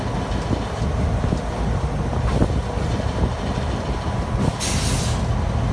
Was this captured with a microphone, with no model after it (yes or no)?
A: yes